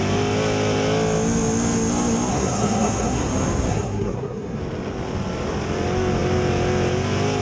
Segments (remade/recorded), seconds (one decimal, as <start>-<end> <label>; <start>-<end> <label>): 0.0-2.3 recorded; 2.3-3.3 remade; 3.3-3.7 recorded; 3.7-4.6 remade; 4.6-7.4 recorded